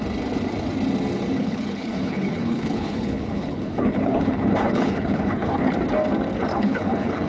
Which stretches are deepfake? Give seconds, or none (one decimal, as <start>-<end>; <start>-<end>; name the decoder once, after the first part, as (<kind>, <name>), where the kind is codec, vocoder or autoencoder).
1.4-5.7 (codec, HILCodec); 6.5-7.3